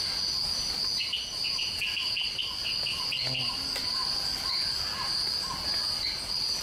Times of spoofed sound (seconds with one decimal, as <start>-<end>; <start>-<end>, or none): none

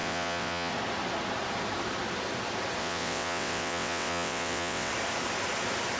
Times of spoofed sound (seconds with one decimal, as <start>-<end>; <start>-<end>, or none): 0.0-0.7; 2.8-4.9

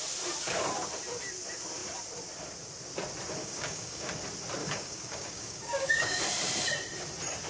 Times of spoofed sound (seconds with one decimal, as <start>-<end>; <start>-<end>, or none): 3.4-4.1; 4.6-6.2

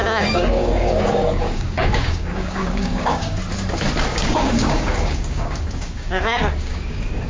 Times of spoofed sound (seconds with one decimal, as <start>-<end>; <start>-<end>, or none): 0.0-3.4; 4.1-7.3

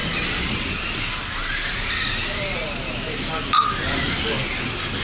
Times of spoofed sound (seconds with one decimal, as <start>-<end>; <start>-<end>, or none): none

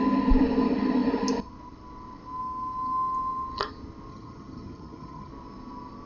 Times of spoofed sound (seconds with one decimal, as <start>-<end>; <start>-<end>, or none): 4.1-5.3

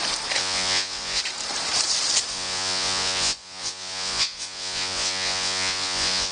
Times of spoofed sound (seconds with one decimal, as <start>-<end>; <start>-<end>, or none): 0.4-1.2; 2.3-6.3